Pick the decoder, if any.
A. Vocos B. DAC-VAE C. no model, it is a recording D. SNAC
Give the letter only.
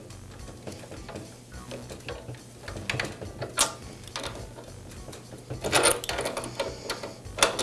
C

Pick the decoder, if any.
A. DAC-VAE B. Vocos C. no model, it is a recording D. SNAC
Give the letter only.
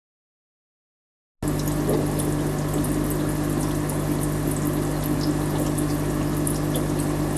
C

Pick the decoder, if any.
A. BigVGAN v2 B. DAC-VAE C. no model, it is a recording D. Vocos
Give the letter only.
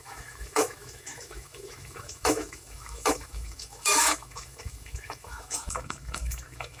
B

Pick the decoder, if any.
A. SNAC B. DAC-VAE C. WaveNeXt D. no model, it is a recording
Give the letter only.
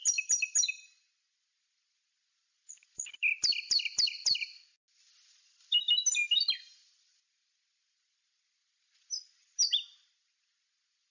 D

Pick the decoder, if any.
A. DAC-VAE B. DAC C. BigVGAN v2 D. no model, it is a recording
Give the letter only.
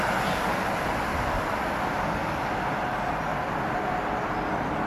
D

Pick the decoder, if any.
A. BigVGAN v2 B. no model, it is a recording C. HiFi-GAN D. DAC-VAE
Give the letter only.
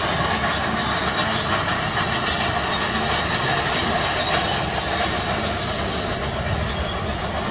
B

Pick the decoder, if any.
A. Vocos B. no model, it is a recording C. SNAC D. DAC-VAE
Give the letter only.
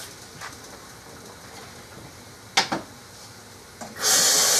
B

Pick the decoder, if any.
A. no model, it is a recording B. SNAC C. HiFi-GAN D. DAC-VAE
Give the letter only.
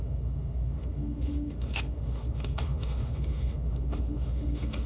D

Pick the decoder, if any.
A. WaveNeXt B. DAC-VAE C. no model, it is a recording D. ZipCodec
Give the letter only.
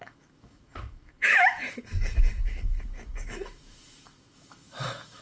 B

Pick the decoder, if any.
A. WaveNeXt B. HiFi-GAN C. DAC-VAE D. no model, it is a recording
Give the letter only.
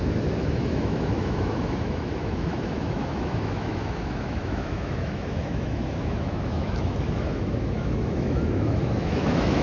C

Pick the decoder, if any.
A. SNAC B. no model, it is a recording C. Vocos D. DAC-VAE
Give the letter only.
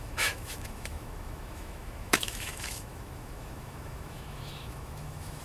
D